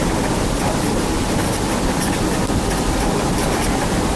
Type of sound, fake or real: real